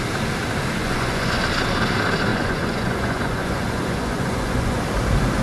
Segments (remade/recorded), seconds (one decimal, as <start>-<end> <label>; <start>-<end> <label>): 0.0-0.8 recorded; 0.8-1.4 remade; 1.4-2.3 recorded; 2.3-4.8 remade; 4.8-5.4 recorded